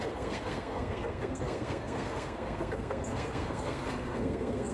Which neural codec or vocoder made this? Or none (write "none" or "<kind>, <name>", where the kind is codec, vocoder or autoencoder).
codec, SNAC